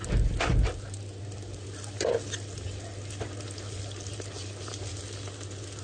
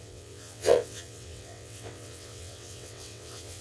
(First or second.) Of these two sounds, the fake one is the second